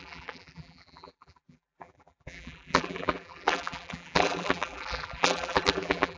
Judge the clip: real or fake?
fake